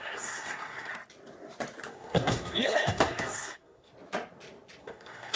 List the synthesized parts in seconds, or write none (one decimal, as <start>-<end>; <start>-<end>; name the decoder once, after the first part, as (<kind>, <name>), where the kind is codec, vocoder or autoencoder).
0.0-0.9 (codec, SNAC); 1.9-3.9; 4.8-5.4